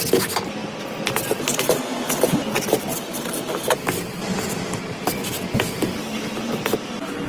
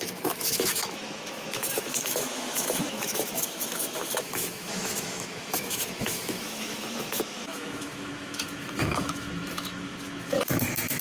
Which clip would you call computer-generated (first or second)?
second